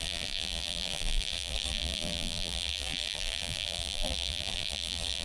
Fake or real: fake